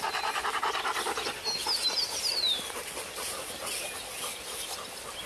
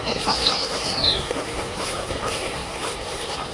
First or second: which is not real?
second